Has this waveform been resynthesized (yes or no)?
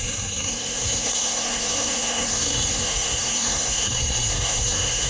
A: yes